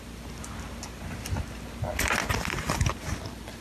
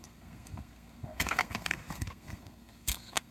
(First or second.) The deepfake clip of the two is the second